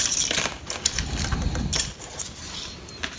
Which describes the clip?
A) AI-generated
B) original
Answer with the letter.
B